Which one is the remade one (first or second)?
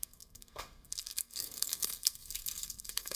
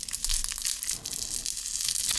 first